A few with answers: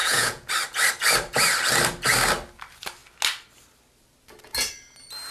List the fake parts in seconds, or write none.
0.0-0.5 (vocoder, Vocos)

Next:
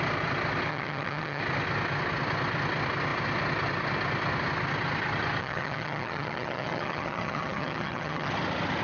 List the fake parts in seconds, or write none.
0.7-1.4 (vocoder, HiFi-GAN); 5.4-8.3